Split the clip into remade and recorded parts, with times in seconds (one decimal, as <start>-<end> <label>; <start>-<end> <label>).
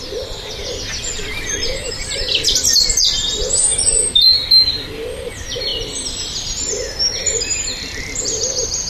0.0-0.6 remade; 0.6-1.7 recorded; 1.7-8.9 remade